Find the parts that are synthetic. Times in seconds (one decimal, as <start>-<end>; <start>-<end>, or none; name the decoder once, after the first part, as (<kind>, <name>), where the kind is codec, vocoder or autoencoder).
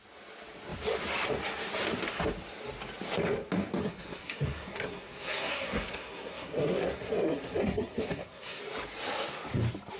3.8-8.6 (codec, SNAC)